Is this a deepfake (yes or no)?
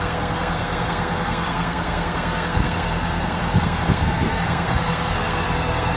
yes